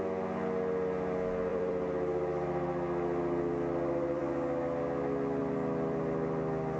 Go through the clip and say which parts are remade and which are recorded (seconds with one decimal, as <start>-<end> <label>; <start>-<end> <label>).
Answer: 0.0-1.5 recorded; 1.5-4.2 remade; 4.2-5.4 recorded; 5.4-6.0 remade; 6.0-6.8 recorded